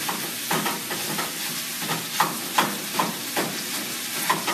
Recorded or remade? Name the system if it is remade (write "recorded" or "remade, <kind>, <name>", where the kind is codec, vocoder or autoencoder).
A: recorded